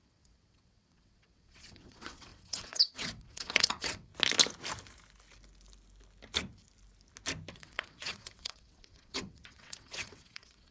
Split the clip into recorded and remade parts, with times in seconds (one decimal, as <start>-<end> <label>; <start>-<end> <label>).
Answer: 0.0-4.1 remade; 4.1-7.5 recorded; 7.5-10.7 remade

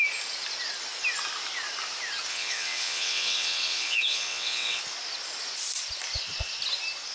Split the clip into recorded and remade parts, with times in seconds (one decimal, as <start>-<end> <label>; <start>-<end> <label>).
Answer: 0.0-2.3 recorded; 2.3-4.8 remade; 4.8-7.1 recorded

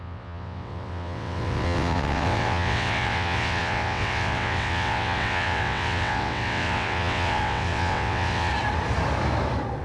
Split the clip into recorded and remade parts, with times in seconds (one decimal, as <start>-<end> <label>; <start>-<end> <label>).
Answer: 0.0-8.5 remade; 8.5-9.8 recorded

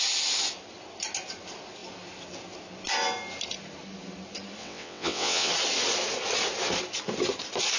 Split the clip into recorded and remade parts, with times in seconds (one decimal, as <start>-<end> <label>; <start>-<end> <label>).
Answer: 0.0-4.6 recorded; 4.6-5.5 remade; 5.5-7.8 recorded

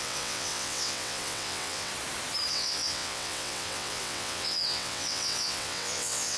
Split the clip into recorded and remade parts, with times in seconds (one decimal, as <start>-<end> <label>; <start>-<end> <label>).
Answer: 0.0-1.9 remade; 1.9-2.5 recorded; 2.5-6.4 remade

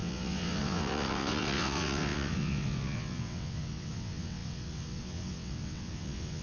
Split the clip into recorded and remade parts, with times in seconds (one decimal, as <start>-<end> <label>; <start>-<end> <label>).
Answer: 0.0-6.4 remade

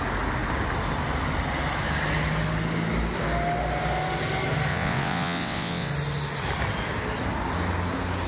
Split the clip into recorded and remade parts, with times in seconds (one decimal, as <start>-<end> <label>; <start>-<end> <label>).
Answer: 0.0-4.7 recorded; 4.7-5.9 remade; 5.9-8.3 recorded

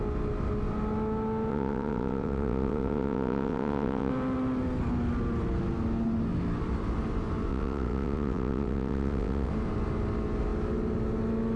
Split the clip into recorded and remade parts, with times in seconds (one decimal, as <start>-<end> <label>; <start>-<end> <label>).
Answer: 0.0-1.5 recorded; 1.5-4.1 remade; 4.1-7.5 recorded; 7.5-9.5 remade; 9.5-11.6 recorded